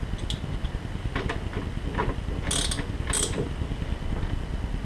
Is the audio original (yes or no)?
yes